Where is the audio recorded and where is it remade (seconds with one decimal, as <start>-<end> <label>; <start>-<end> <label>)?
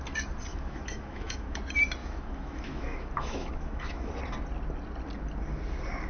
0.0-0.5 recorded; 0.5-1.6 remade; 1.6-2.0 recorded; 2.0-4.1 remade; 4.1-6.1 recorded